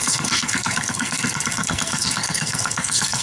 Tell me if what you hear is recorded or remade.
remade